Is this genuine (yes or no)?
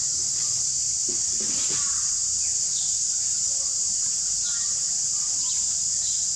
no